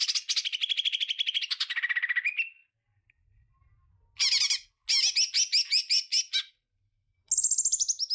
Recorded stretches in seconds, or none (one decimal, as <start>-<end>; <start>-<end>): 0.0-8.1